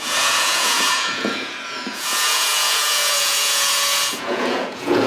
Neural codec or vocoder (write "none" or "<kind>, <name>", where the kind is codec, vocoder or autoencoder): vocoder, Vocos